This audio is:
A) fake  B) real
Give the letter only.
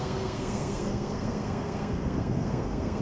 A